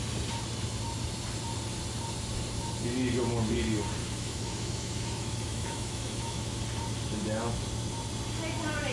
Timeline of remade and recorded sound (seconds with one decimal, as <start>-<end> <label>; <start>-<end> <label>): 0.0-4.0 recorded; 4.0-6.6 remade; 6.6-7.1 recorded; 7.1-7.6 remade; 7.6-8.9 recorded